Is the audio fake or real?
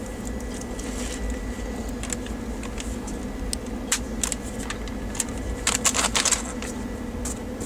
real